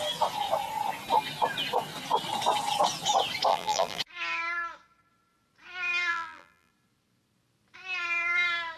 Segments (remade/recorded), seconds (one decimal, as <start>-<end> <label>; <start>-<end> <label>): 0.0-3.5 recorded; 3.5-4.0 remade; 4.0-6.1 recorded; 6.1-6.7 remade; 6.7-8.8 recorded